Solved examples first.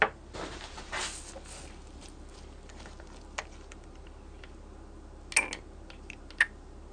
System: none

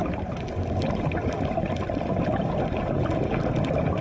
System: none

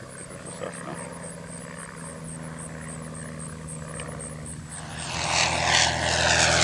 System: none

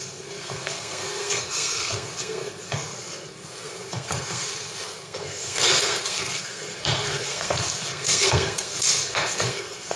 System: codec, SNAC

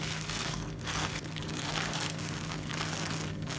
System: codec, SNAC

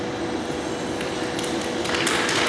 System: none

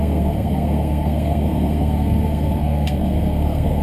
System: codec, SNAC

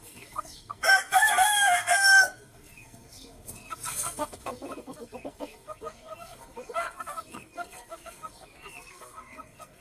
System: codec, SNAC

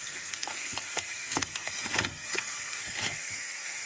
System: codec, SNAC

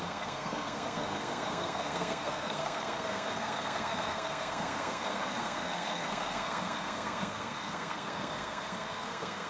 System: codec, SNAC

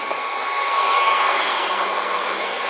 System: codec, SNAC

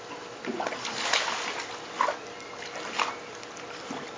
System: none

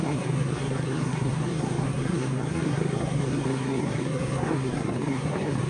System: codec, SNAC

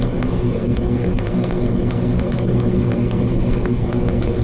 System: codec, SNAC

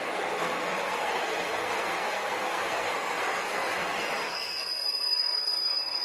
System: codec, SNAC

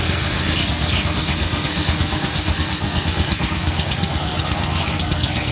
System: codec, SNAC